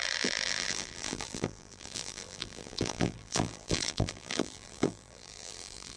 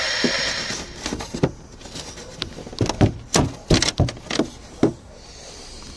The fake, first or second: first